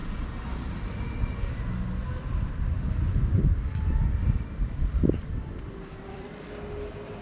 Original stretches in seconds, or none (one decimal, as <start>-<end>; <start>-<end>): 0.0-2.0; 6.3-7.2